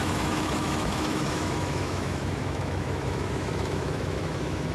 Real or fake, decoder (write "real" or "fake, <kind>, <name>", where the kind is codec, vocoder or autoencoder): fake, autoencoder, DAC-VAE